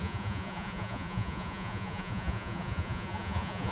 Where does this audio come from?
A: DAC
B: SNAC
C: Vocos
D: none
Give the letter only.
C